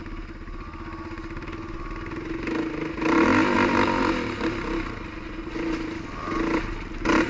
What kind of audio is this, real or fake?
real